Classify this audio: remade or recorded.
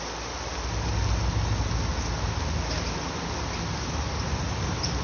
recorded